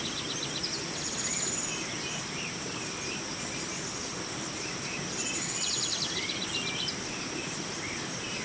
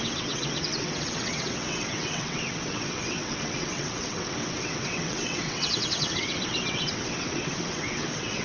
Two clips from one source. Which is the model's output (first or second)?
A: second